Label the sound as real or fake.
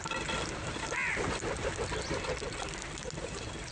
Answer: real